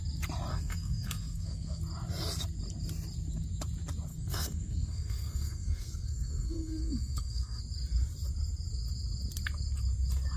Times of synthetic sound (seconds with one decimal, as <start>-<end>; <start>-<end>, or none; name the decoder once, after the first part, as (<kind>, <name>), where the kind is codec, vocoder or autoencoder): 0.5-1.8 (codec, SNAC); 4.1-7.6